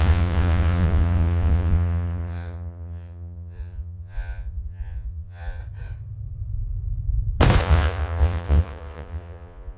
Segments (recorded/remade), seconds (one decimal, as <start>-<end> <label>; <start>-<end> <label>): 0.0-5.6 remade; 5.6-7.6 recorded; 7.6-9.8 remade